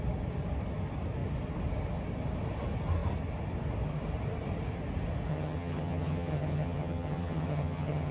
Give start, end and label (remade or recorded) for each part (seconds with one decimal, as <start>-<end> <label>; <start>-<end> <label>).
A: 0.0-5.3 recorded; 5.3-8.1 remade